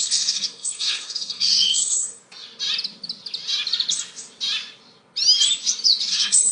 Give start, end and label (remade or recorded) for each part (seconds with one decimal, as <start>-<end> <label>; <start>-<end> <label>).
0.0-2.2 remade; 2.2-6.1 recorded; 6.1-6.5 remade